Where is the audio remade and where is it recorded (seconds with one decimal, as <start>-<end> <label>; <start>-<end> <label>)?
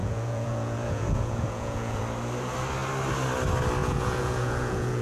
0.0-2.0 remade; 2.0-3.8 recorded; 3.8-5.0 remade